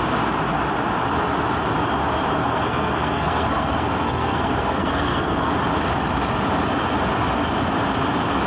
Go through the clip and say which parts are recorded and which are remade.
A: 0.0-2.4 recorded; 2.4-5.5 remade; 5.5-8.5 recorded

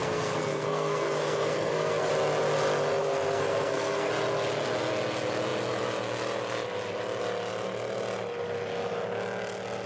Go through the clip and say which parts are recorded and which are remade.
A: 0.0-2.1 remade; 2.1-3.0 recorded; 3.0-4.1 remade; 4.1-9.9 recorded

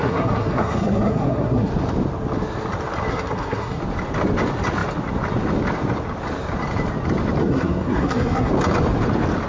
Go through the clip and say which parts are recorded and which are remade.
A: 0.0-1.7 remade; 1.7-3.1 recorded; 3.1-3.8 remade; 3.8-7.4 recorded; 7.4-8.5 remade; 8.5-9.5 recorded

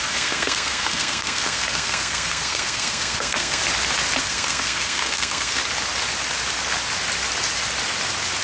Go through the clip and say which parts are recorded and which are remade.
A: 0.0-3.6 remade; 3.6-4.2 recorded; 4.2-5.6 remade; 5.6-8.4 recorded

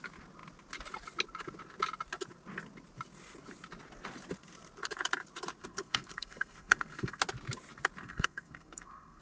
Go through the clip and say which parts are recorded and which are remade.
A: 0.0-5.6 recorded; 5.6-7.2 remade; 7.2-8.0 recorded; 8.0-9.2 remade

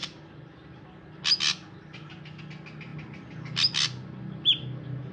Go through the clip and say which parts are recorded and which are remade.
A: 0.0-5.1 recorded

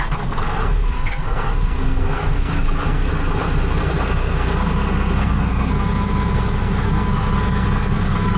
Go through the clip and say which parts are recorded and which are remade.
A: 0.0-3.1 remade; 3.1-3.8 recorded; 3.8-8.4 remade